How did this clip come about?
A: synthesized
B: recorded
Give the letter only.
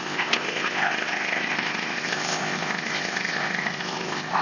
A